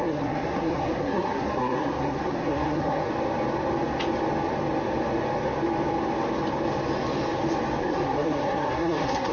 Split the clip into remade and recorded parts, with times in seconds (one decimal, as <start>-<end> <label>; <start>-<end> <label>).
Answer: 0.0-3.0 remade; 3.0-7.8 recorded; 7.8-9.3 remade